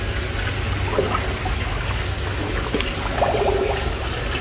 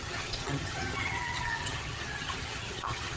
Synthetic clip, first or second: second